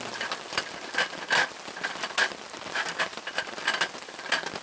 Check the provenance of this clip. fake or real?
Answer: real